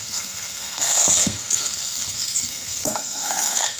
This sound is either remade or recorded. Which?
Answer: remade